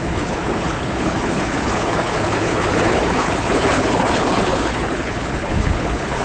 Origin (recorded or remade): remade